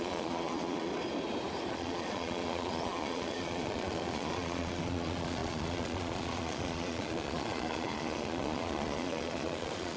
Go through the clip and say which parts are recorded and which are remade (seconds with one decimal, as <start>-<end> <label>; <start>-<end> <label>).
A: 0.0-0.9 remade; 0.9-1.7 recorded; 1.7-10.0 remade